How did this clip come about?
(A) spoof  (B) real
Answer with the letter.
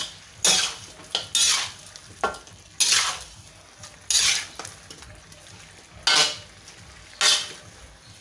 B